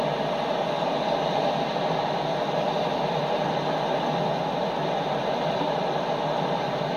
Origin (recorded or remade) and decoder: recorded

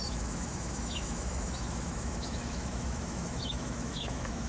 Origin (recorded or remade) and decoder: remade, autoencoder, DAC-VAE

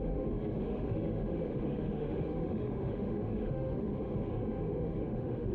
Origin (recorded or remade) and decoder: remade, autoencoder, DAC-VAE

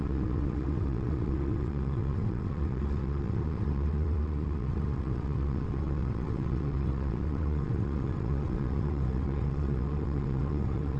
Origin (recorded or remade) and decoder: remade, vocoder, WaveNeXt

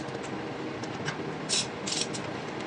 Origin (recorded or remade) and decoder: recorded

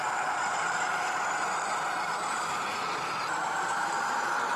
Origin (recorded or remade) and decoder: remade, vocoder, BigVGAN v2